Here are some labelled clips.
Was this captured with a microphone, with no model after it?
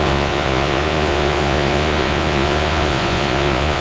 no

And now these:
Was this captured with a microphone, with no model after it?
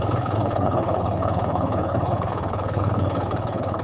no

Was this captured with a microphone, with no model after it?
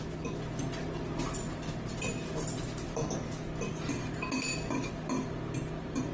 yes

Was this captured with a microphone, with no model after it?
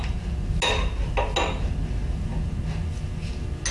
yes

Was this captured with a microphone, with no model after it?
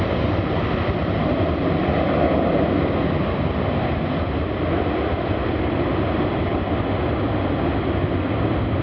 yes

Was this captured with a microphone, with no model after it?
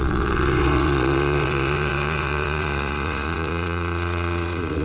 no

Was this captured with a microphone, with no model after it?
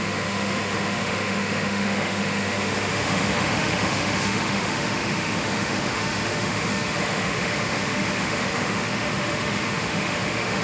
no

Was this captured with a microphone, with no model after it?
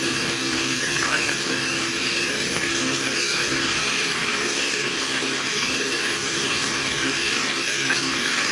no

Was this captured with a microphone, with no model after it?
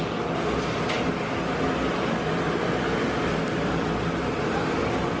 yes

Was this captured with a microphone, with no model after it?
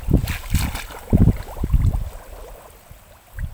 yes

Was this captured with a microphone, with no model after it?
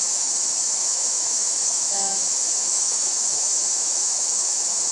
no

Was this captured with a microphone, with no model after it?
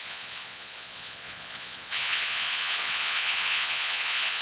no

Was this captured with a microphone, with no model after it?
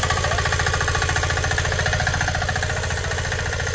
yes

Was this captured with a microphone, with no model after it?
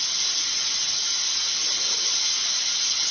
yes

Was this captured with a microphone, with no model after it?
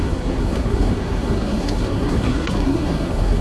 no